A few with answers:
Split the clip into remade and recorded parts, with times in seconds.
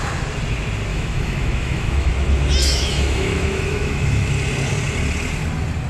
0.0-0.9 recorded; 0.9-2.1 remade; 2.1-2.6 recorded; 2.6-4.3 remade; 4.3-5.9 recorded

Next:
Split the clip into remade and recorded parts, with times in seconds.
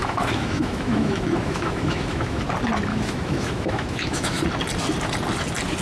0.0-2.4 remade; 2.4-2.9 recorded; 2.9-4.4 remade; 4.4-5.8 recorded